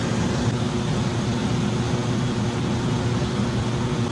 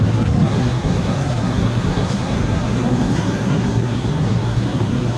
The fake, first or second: second